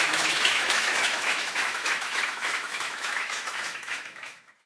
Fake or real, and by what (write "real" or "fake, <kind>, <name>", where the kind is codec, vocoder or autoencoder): fake, autoencoder, DAC-VAE